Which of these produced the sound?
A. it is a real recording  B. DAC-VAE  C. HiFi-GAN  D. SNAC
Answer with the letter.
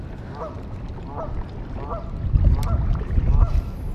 A